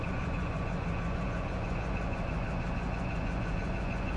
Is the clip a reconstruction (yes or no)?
yes